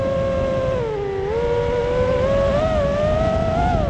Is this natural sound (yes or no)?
yes